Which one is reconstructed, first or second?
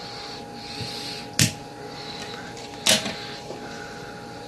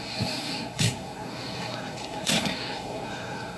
second